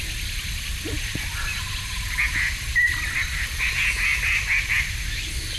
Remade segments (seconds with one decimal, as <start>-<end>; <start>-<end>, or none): none